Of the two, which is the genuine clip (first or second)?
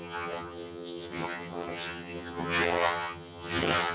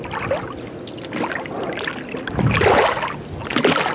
second